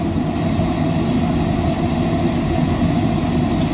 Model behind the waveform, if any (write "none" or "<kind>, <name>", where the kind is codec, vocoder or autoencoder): none